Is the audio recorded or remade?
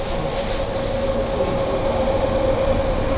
recorded